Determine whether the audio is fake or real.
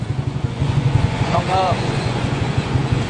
fake